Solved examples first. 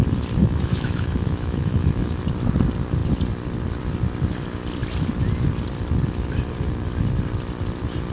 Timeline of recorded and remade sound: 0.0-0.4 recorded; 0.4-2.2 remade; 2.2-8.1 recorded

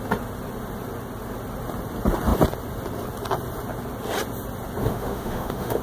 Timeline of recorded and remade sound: 0.0-4.8 recorded; 4.8-5.8 remade

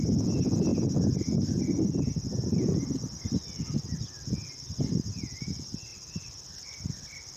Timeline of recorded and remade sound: 0.0-7.4 recorded